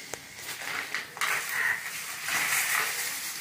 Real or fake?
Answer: real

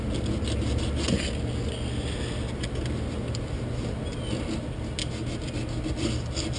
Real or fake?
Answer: real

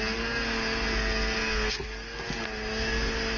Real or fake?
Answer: real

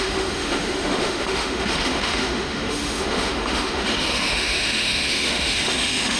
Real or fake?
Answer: fake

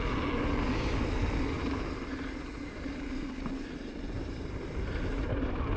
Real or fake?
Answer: real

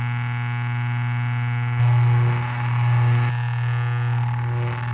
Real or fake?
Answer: real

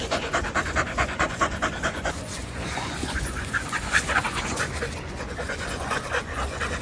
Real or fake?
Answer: fake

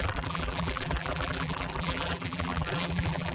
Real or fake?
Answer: fake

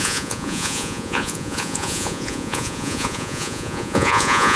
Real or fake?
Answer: fake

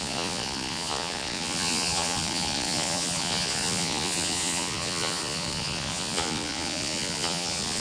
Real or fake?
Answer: fake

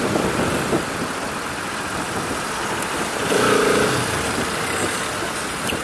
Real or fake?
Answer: real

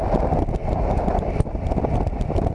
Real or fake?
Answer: real